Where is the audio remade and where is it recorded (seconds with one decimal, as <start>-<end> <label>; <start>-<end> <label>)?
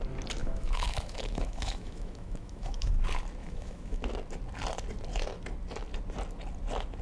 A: 0.0-0.4 recorded; 0.4-2.9 remade; 2.9-3.4 recorded; 3.4-4.0 remade; 4.0-7.0 recorded